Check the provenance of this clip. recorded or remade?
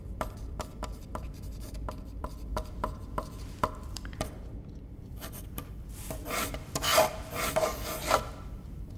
remade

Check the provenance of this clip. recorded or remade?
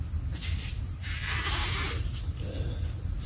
recorded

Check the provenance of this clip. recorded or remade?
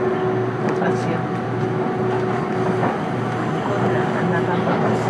recorded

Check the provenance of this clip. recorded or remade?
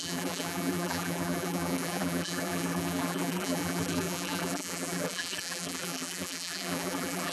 remade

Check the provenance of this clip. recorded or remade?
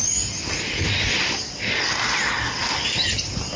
recorded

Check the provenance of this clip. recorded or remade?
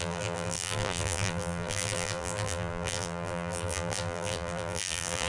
remade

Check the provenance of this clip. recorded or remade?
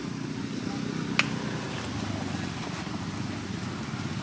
recorded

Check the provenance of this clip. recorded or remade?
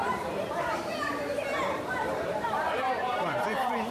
remade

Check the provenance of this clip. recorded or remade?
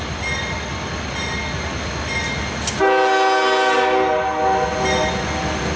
recorded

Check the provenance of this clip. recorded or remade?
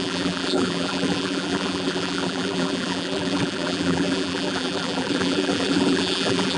remade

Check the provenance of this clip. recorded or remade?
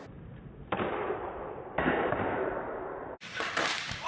remade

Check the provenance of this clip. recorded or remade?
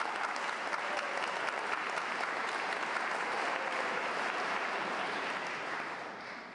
remade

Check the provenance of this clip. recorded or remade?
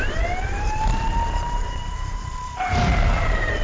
remade